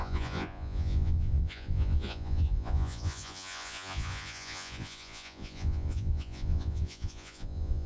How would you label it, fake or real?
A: fake